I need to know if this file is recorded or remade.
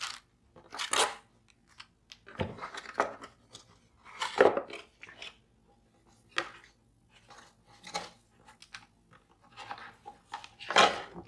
recorded